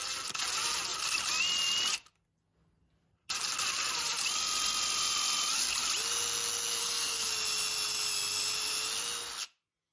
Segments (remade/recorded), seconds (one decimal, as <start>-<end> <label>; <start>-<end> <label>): 0.0-6.8 recorded; 6.8-7.3 remade; 7.3-9.9 recorded